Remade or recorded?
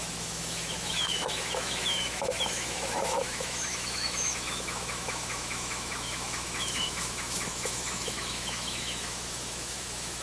remade